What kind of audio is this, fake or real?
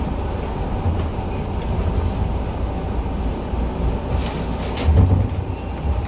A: real